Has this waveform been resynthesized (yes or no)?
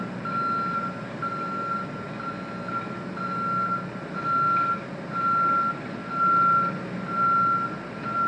no